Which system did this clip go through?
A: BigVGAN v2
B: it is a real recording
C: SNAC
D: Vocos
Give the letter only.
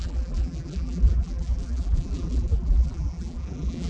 A